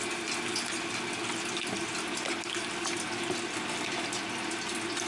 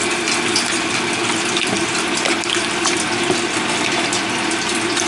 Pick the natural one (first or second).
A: first